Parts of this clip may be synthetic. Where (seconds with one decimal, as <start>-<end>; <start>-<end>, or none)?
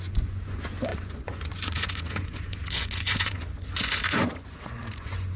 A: 0.0-5.4